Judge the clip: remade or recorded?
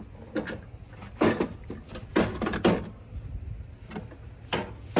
recorded